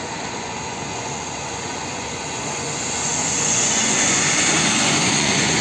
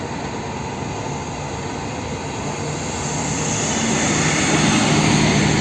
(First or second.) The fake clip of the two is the first